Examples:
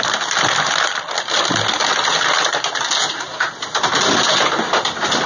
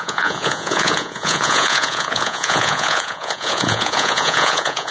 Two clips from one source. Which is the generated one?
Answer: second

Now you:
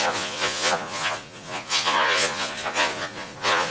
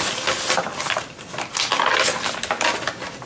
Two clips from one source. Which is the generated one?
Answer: first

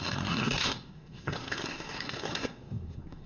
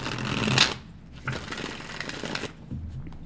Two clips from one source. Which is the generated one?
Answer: first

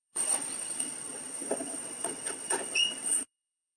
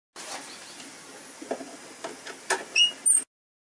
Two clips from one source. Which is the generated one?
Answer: first